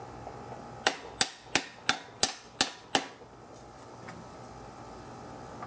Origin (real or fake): real